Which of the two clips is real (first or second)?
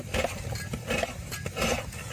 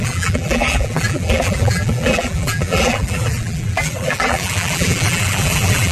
first